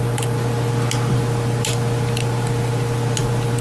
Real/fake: real